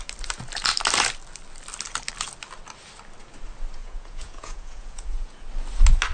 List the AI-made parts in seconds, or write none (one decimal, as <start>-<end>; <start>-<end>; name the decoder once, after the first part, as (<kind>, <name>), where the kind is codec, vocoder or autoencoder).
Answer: 3.8-5.5 (vocoder, Vocos)